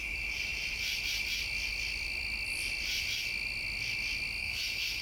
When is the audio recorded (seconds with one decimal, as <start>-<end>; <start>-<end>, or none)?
0.0-4.4